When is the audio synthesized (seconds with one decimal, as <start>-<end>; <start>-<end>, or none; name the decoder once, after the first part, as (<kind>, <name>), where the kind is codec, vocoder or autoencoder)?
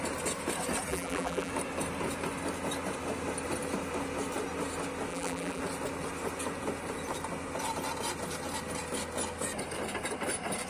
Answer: 0.9-1.5 (vocoder, BigVGAN v2); 5.1-5.6